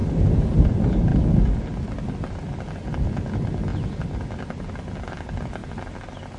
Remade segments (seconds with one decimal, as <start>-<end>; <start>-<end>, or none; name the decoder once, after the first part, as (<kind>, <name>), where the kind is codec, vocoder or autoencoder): 0.0-0.6 (vocoder, BigVGAN v2)